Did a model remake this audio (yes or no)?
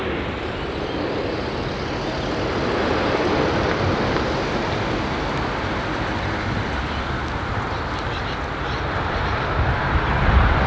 no